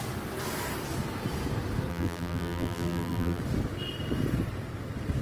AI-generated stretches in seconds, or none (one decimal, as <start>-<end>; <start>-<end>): 1.9-3.4